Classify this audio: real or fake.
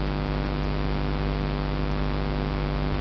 real